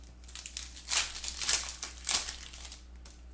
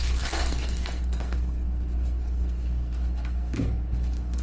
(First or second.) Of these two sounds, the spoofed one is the second